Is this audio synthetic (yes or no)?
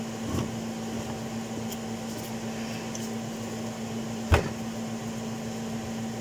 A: no